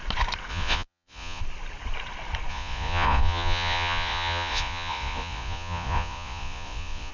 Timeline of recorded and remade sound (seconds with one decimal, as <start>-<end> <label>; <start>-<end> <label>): 0.0-0.5 recorded; 0.5-1.4 remade; 1.4-2.5 recorded; 2.5-7.1 remade